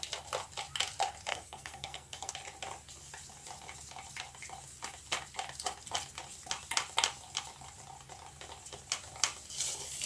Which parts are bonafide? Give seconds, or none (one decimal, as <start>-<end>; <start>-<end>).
0.0-1.3; 2.3-10.1